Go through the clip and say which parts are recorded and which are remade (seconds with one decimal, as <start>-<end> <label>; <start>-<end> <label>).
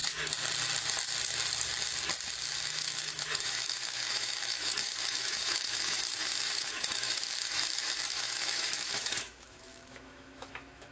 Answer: 0.0-2.5 recorded; 2.5-10.9 remade